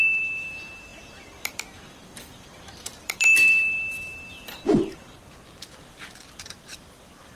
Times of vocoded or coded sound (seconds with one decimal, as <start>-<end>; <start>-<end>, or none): 0.0-4.1; 5.6-7.4